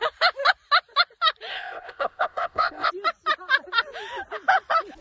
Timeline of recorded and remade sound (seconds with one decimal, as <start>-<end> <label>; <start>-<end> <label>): 0.0-1.5 recorded; 1.5-2.9 remade; 2.9-5.0 recorded

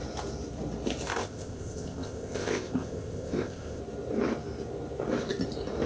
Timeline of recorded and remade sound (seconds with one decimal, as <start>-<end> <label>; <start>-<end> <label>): 0.0-1.1 recorded; 1.1-3.8 remade; 3.8-5.9 recorded

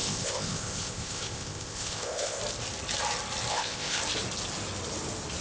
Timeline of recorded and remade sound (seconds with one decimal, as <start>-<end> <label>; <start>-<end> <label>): 0.0-2.4 remade; 2.4-3.5 recorded; 3.5-4.0 remade; 4.0-5.4 recorded